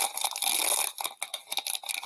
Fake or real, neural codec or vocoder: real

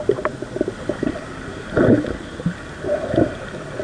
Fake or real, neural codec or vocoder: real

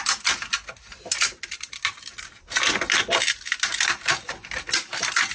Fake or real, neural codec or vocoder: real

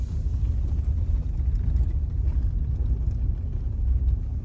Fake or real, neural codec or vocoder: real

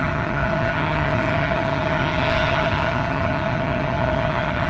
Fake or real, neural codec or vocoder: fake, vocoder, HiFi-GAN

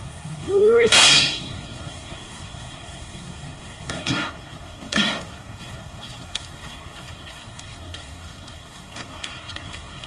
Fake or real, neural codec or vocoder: fake, codec, SNAC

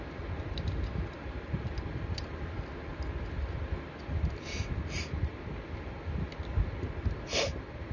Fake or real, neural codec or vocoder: real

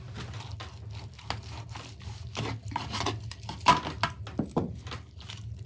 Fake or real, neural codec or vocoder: real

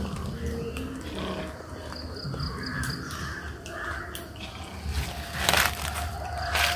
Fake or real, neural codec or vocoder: real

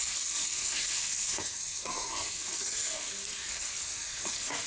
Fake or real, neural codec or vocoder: fake, codec, SNAC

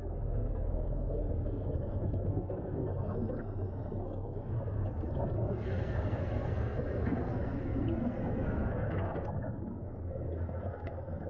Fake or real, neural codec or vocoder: fake, codec, SNAC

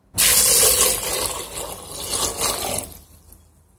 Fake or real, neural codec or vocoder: real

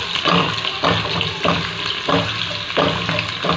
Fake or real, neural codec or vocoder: real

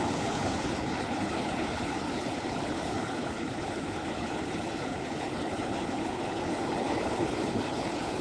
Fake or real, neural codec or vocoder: fake, codec, HILCodec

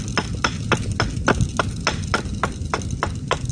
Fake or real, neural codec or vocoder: real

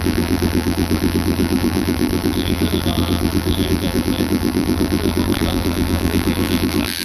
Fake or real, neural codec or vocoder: fake, vocoder, BigVGAN v2